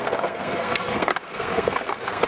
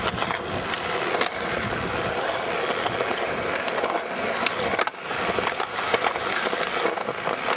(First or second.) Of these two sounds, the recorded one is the second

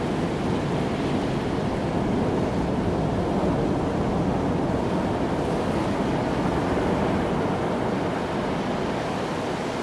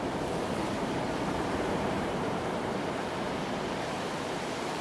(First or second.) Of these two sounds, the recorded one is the first